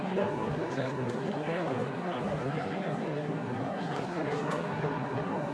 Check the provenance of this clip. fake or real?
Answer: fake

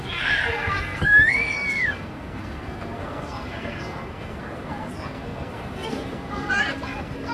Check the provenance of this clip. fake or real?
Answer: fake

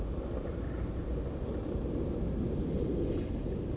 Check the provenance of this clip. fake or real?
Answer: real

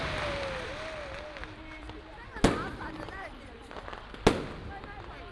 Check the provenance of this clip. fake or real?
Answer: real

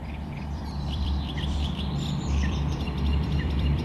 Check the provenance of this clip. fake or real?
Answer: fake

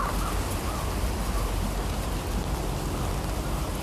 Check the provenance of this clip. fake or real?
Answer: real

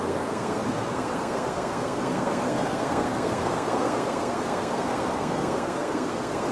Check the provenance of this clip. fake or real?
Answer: fake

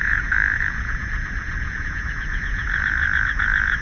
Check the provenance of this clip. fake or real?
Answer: fake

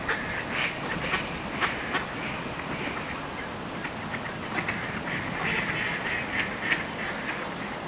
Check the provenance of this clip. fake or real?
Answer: real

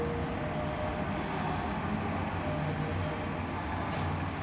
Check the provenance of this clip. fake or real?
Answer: real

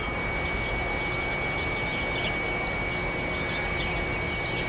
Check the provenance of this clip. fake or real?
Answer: real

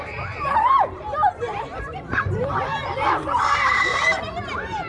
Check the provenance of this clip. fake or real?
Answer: fake